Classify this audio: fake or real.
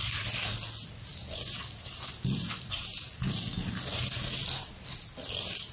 real